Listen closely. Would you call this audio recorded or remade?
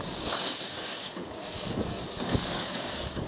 remade